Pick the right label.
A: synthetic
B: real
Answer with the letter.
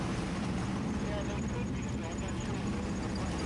B